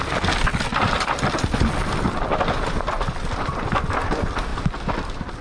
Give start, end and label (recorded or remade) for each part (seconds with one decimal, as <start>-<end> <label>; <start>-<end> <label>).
0.0-0.7 recorded; 0.7-3.5 remade; 3.5-5.4 recorded